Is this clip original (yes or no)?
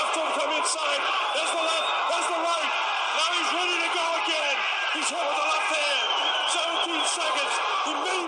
yes